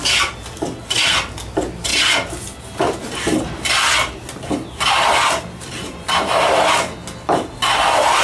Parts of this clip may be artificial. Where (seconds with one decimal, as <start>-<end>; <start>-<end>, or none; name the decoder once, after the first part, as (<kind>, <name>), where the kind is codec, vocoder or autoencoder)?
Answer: none